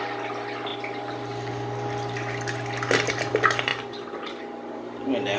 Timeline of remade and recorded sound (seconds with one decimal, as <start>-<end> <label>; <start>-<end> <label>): 0.0-5.4 recorded